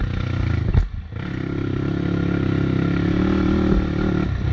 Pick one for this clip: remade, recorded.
recorded